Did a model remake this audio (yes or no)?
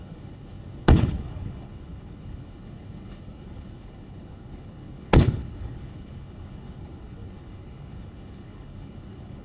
yes